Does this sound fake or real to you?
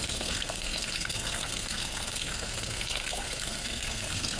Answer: fake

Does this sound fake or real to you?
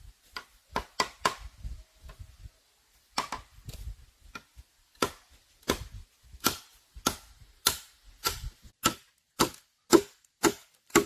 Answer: real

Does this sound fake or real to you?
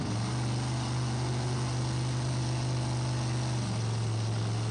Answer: real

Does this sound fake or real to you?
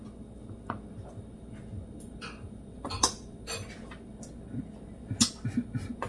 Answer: real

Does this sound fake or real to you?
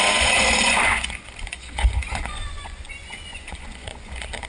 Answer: fake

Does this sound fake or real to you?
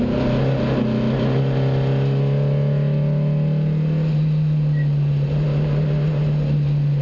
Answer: real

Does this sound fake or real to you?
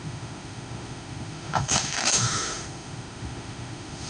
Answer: fake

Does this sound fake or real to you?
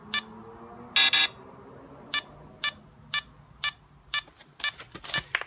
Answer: real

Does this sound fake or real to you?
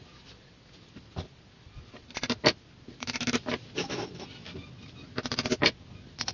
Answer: real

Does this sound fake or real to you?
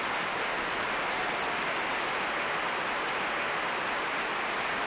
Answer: real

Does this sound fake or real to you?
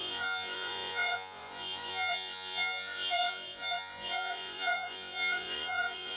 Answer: fake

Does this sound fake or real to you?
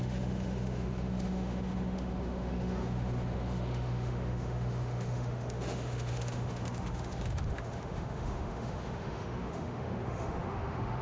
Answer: fake